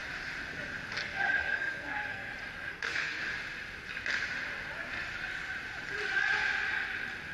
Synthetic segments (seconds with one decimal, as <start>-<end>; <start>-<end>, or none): 1.0-2.3; 2.7-3.2